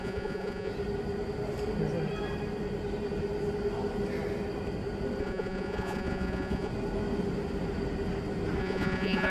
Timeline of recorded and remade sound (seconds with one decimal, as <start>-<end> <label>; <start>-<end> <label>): 0.0-0.7 remade; 0.7-5.2 recorded; 5.2-6.7 remade; 6.7-8.6 recorded; 8.6-9.3 remade